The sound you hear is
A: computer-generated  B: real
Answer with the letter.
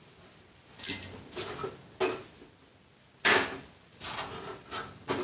B